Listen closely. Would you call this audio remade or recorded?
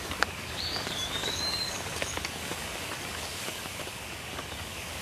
remade